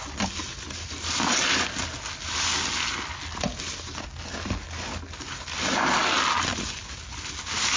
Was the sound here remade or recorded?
recorded